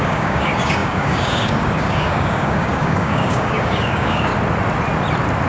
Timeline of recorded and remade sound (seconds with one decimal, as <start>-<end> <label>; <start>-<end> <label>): 0.0-4.3 remade; 4.3-5.5 recorded